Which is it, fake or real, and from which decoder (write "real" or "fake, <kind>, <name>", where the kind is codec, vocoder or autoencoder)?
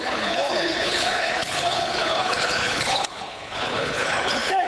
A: fake, codec, HILCodec